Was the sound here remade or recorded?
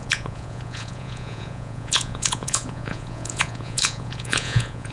remade